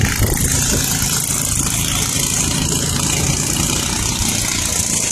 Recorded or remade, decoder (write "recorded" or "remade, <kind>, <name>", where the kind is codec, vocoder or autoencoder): recorded